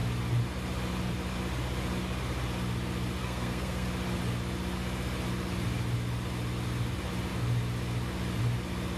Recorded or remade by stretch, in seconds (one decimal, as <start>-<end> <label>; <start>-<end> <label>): 0.0-3.2 recorded; 3.2-3.9 remade; 3.9-9.0 recorded

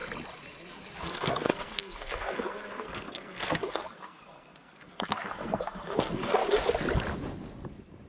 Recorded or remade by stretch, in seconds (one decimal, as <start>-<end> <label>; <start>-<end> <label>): 0.0-1.0 recorded; 1.0-6.4 remade; 6.4-8.1 recorded